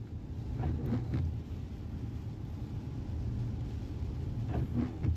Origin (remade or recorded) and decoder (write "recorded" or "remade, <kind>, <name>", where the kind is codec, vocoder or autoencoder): recorded